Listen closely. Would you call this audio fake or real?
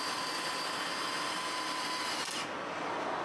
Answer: real